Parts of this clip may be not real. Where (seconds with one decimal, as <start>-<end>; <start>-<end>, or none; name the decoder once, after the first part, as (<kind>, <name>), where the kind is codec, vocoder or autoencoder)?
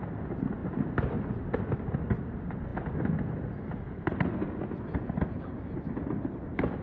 0.6-1.6 (vocoder, BigVGAN v2)